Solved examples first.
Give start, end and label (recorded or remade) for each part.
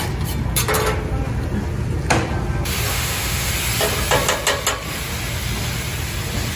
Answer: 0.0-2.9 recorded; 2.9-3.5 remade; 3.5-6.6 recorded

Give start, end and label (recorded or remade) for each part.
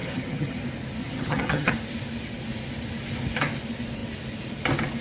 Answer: 0.0-0.6 remade; 0.6-1.0 recorded; 1.0-1.7 remade; 1.7-5.0 recorded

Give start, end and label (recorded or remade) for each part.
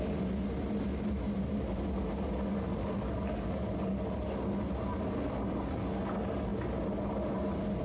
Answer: 0.0-7.8 recorded